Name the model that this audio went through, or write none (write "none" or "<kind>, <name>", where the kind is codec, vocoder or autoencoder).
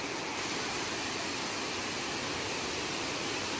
none